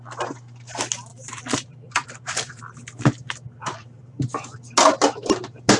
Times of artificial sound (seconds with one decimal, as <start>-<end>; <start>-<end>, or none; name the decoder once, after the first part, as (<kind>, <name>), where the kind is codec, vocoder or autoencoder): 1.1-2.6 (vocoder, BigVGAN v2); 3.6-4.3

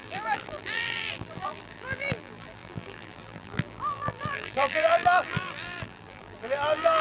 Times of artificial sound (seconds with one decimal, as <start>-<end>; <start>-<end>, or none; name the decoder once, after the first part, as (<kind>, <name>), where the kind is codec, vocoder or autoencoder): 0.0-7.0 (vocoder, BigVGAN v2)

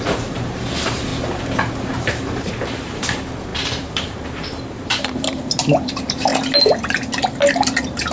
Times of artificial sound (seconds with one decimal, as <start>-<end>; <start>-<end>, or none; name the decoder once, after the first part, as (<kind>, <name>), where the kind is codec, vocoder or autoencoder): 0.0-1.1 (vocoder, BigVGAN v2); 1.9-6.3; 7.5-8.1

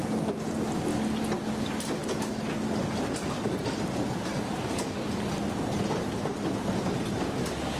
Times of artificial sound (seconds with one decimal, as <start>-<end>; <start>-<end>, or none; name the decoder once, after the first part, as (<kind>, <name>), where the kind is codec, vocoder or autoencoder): none